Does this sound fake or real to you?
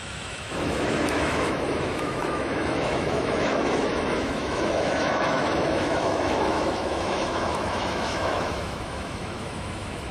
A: fake